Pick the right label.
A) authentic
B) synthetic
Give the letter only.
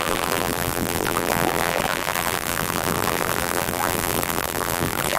B